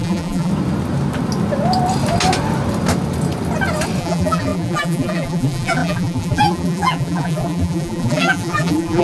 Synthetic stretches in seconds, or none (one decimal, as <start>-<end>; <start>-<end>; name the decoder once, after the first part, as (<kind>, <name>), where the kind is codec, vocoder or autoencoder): 0.0-0.5 (vocoder, BigVGAN v2); 4.0-9.0